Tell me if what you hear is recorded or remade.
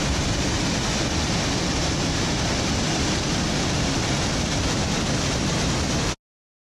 recorded